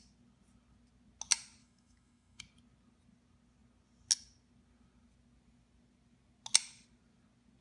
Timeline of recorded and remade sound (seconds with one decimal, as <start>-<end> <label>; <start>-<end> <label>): 0.0-1.6 recorded; 1.6-2.4 remade; 2.4-7.6 recorded